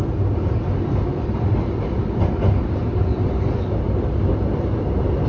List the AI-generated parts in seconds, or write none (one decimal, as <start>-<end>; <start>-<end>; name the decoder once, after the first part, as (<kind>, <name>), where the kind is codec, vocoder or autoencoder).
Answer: none